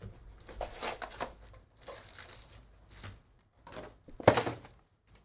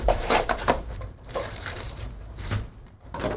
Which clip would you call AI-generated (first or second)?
second